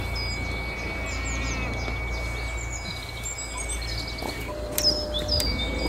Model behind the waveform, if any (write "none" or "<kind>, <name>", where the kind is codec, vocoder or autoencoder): none